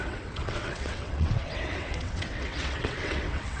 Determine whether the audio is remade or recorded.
remade